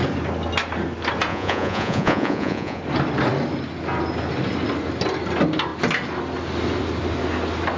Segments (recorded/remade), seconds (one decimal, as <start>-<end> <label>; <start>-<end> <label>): 0.0-1.3 recorded; 1.3-2.8 remade; 2.8-7.8 recorded